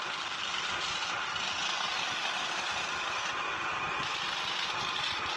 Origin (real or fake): real